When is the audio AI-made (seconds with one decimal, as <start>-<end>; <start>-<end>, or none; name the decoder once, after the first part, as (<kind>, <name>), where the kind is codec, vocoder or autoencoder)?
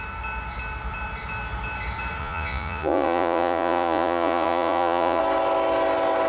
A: 2.2-5.2 (vocoder, Vocos)